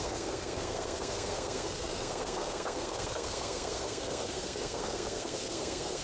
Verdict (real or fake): fake